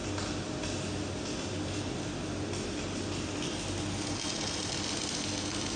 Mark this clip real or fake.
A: real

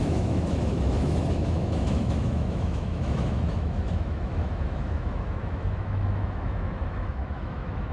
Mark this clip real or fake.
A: fake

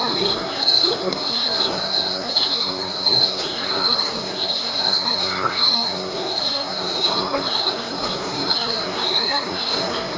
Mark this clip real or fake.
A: fake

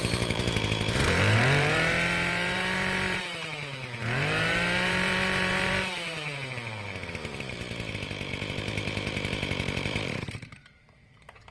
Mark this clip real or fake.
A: fake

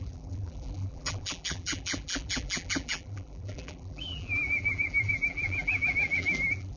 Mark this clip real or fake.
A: fake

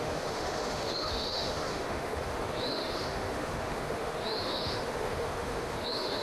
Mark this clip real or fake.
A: fake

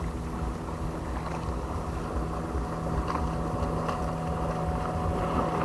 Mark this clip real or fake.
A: real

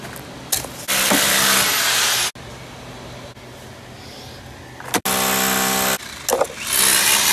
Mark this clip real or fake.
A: real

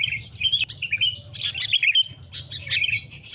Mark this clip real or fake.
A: real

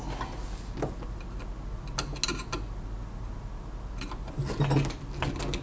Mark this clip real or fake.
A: real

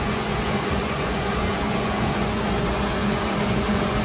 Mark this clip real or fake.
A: fake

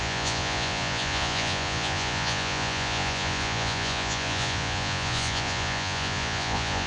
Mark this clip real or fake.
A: fake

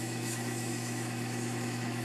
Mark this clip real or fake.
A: fake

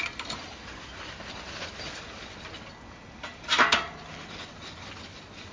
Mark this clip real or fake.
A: real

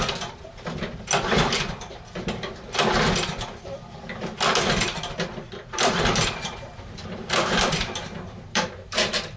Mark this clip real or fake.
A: fake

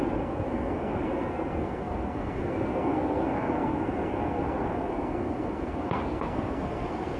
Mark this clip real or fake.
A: fake